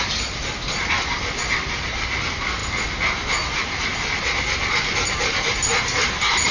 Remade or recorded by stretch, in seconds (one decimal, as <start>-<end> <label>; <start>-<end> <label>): 0.0-6.5 recorded